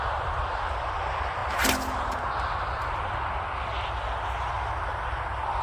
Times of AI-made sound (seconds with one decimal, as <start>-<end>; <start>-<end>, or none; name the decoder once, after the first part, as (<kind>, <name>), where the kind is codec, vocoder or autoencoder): none

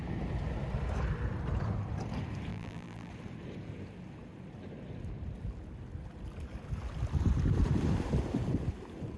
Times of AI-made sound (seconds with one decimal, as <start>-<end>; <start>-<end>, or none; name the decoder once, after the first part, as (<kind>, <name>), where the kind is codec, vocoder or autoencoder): 2.5-3.1 (vocoder, BigVGAN v2)

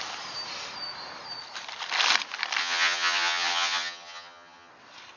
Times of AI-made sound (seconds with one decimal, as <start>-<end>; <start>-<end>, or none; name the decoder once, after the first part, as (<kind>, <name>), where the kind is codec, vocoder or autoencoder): 2.6-4.7 (vocoder, HiFi-GAN)